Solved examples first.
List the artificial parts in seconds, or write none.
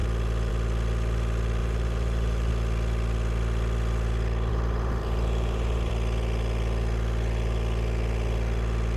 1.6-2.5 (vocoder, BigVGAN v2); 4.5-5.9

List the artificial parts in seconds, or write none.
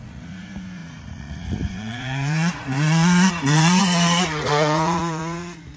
0.0-5.8 (vocoder, Vocos)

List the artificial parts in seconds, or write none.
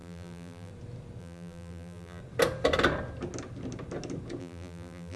0.0-0.7 (vocoder, BigVGAN v2); 1.2-2.2; 4.4-5.2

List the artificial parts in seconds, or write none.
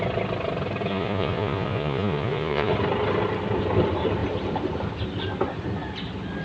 0.9-2.7 (vocoder, Vocos)